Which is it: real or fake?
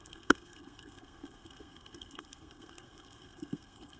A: fake